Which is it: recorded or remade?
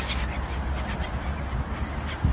recorded